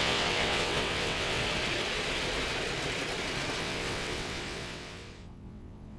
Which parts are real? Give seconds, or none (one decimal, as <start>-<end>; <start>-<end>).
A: 1.4-3.6